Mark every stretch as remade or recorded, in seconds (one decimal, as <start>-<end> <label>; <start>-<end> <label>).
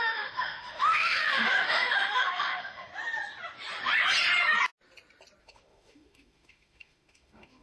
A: 0.0-2.9 remade; 2.9-5.4 recorded; 5.4-7.6 remade